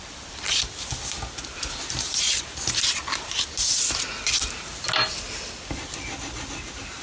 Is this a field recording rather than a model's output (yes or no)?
yes